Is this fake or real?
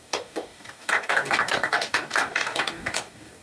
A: fake